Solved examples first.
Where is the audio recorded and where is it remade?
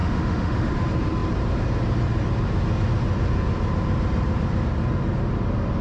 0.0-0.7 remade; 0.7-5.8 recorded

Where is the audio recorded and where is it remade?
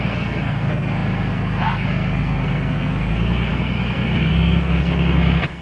0.0-5.6 remade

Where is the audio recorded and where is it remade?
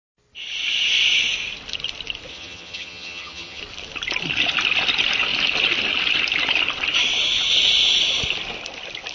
0.0-2.3 recorded; 2.3-3.6 remade; 3.6-9.1 recorded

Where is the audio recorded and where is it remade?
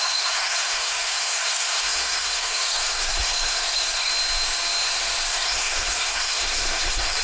0.0-4.1 remade; 4.1-5.3 recorded; 5.3-7.2 remade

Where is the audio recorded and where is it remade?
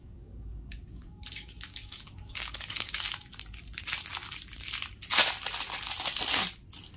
0.0-3.0 remade; 3.0-7.0 recorded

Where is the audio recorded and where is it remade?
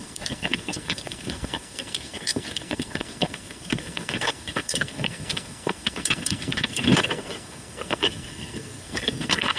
0.0-9.6 remade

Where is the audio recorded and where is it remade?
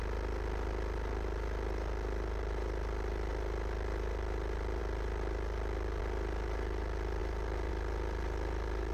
0.0-7.2 recorded; 7.2-7.7 remade; 7.7-8.9 recorded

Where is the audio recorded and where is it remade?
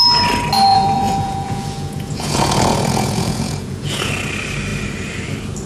0.0-0.7 recorded; 0.7-4.1 remade; 4.1-5.7 recorded